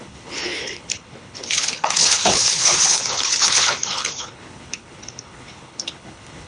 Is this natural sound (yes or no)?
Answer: no